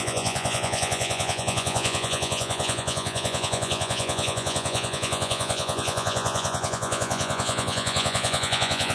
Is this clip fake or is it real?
fake